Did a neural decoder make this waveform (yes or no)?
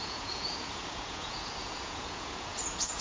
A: yes